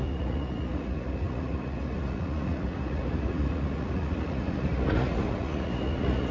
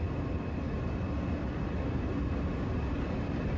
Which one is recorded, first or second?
second